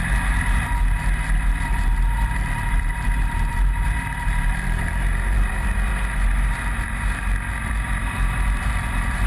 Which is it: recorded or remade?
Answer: remade